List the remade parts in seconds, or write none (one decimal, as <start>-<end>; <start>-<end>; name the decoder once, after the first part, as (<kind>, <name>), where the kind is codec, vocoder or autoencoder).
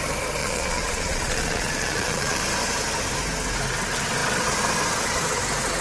0.4-2.4 (vocoder, Vocos)